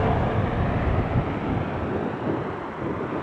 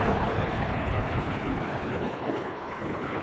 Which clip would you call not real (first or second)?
second